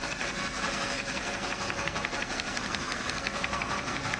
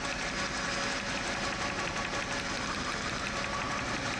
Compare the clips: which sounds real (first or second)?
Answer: second